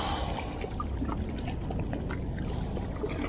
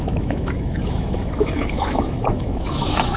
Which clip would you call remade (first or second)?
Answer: second